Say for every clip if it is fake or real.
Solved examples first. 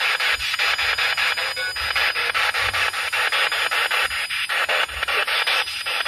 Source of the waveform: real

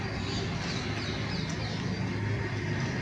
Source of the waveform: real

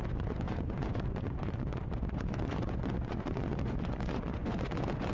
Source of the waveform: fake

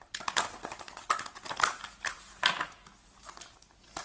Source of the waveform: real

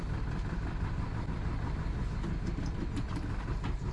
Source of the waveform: real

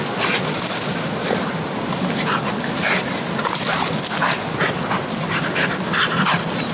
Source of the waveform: real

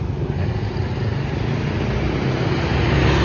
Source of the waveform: real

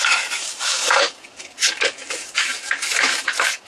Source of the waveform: fake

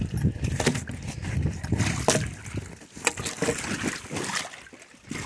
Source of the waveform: real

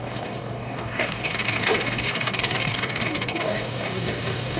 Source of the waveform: fake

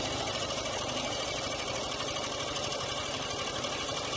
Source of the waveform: fake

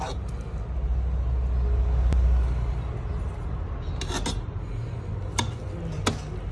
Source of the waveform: real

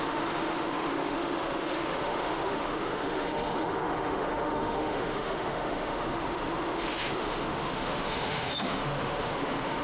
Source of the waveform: fake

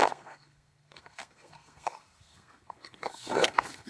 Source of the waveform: fake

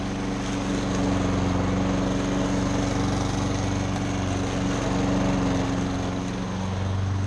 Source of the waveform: real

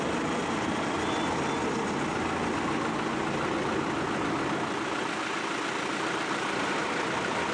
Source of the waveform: real